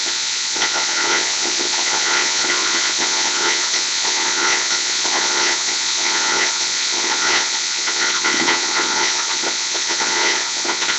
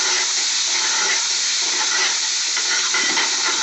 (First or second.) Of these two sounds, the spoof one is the first